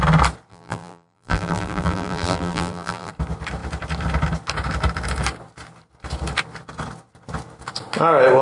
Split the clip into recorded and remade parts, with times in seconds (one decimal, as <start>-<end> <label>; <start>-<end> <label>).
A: 0.0-0.5 recorded; 0.5-3.1 remade; 3.1-8.4 recorded